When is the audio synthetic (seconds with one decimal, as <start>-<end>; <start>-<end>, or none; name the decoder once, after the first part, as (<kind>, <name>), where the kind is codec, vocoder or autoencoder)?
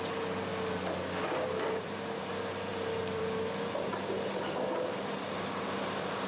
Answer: none